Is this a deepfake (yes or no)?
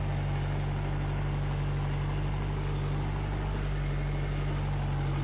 no